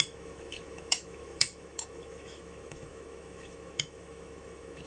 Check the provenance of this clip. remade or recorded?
remade